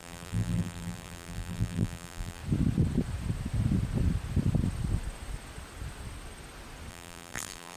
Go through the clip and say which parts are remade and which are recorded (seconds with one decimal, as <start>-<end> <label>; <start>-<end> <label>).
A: 0.0-2.4 remade; 2.4-6.9 recorded; 6.9-7.8 remade